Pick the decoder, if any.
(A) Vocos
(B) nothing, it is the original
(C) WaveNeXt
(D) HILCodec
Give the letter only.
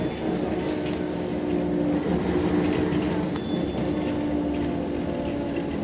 B